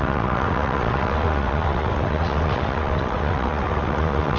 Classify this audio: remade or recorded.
remade